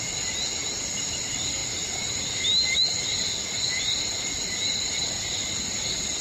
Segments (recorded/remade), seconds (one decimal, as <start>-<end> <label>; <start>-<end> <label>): 0.0-6.2 recorded